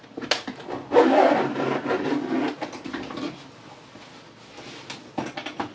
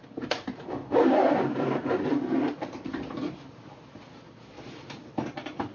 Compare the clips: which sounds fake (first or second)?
second